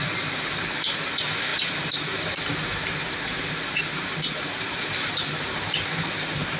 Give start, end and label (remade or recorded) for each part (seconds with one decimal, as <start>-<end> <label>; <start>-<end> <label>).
0.0-6.6 recorded

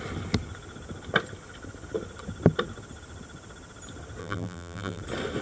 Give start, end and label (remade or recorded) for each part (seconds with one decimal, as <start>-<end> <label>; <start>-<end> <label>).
0.0-4.2 recorded; 4.2-5.0 remade; 5.0-5.4 recorded